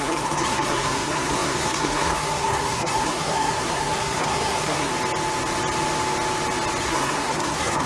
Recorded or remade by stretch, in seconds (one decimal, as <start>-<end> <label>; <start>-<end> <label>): 0.0-4.9 remade; 4.9-6.8 recorded; 6.8-7.9 remade